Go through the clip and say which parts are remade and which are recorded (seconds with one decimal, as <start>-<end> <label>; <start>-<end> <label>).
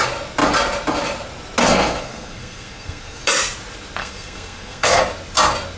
0.0-1.6 recorded; 1.6-3.2 remade; 3.2-4.0 recorded; 4.0-5.0 remade; 5.0-5.8 recorded